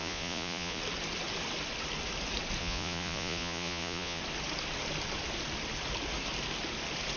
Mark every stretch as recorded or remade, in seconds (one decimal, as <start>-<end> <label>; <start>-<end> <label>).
0.0-0.8 remade; 0.8-2.6 recorded; 2.6-4.2 remade; 4.2-7.2 recorded